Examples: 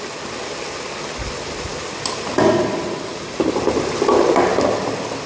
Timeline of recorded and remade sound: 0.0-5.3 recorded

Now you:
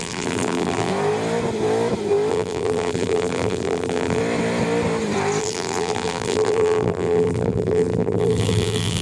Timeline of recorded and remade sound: 0.0-0.9 remade; 0.9-2.3 recorded; 2.3-4.2 remade; 4.2-5.4 recorded; 5.4-9.0 remade

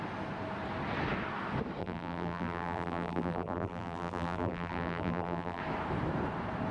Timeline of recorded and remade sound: 0.0-1.8 recorded; 1.8-5.6 remade; 5.6-6.7 recorded

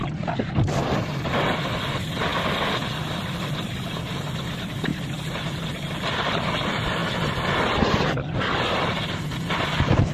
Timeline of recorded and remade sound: 0.0-4.9 remade; 4.9-6.1 recorded; 6.1-10.1 remade